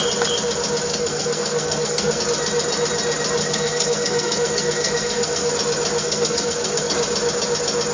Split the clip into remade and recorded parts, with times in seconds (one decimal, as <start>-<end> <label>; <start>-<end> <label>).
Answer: 0.0-0.9 recorded; 0.9-2.2 remade; 2.2-3.4 recorded; 3.4-5.5 remade; 5.5-6.0 recorded; 6.0-6.9 remade; 6.9-7.9 recorded